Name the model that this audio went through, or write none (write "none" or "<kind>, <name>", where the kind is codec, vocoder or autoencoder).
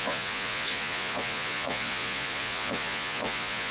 vocoder, Vocos